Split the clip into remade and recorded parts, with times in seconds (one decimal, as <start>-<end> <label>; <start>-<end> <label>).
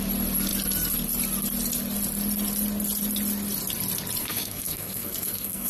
0.0-4.2 recorded; 4.2-5.7 remade